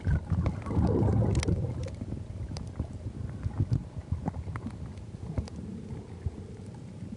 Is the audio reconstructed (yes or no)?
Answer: no